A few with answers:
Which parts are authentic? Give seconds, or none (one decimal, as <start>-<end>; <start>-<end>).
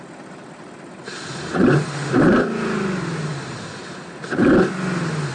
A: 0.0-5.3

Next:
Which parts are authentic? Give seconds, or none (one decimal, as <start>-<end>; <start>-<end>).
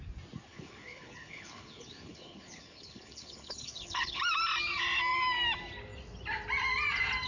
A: 0.0-0.5; 4.2-7.3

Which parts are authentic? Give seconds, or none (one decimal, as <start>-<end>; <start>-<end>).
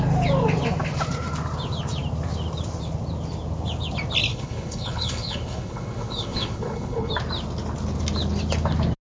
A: 0.0-4.3; 7.1-9.1